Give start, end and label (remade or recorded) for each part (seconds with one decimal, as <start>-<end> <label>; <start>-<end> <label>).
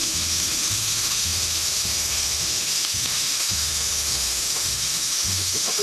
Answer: 0.0-5.8 remade